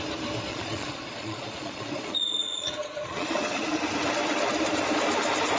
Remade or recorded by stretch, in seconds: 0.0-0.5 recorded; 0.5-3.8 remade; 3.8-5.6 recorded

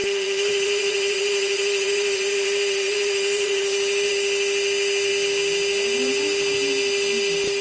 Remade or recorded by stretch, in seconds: 0.0-4.1 remade; 4.1-7.6 recorded

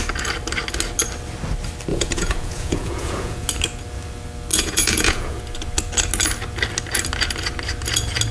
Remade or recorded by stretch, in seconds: 0.0-1.9 recorded; 1.9-3.5 remade; 3.5-4.5 recorded; 4.5-5.4 remade; 5.4-8.3 recorded

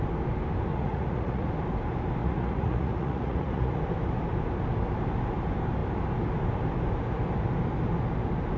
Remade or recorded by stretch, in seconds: 0.0-0.7 recorded; 0.7-1.5 remade; 1.5-2.2 recorded; 2.2-3.8 remade; 3.8-8.6 recorded

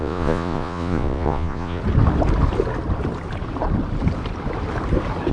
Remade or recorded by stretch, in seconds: 0.0-1.8 remade; 1.8-5.3 recorded

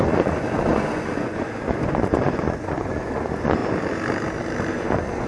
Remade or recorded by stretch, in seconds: 0.0-3.6 remade; 3.6-4.7 recorded; 4.7-5.3 remade

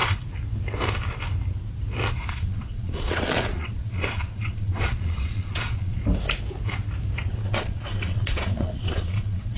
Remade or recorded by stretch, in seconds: 0.0-2.1 recorded; 2.1-6.0 remade; 6.0-7.3 recorded; 7.3-9.6 remade